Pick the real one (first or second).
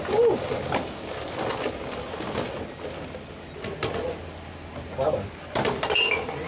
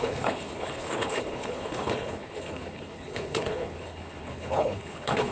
first